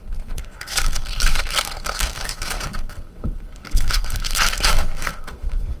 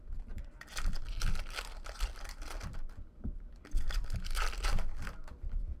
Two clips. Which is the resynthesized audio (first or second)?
first